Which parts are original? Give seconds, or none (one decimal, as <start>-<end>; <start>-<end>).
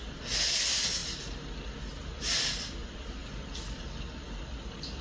0.0-5.0